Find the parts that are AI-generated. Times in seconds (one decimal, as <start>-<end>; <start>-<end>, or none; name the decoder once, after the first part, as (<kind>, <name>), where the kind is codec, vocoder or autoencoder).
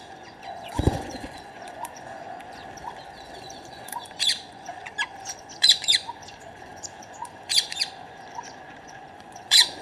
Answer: 0.0-2.6 (vocoder, Vocos); 3.4-9.8